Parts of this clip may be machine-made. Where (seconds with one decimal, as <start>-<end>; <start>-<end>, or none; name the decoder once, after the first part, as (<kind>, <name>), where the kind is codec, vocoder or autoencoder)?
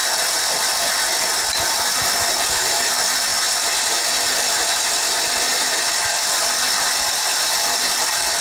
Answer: none